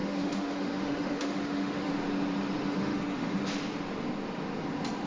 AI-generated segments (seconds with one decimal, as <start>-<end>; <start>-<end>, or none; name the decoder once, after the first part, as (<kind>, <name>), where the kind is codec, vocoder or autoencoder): 0.0-1.9 (autoencoder, DAC-VAE); 2.6-3.4